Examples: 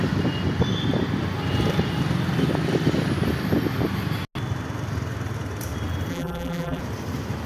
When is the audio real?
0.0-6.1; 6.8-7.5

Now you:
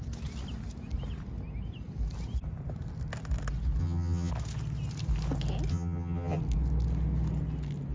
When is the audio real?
0.0-3.8; 4.3-5.7; 6.4-7.9